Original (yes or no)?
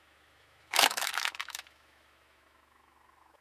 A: no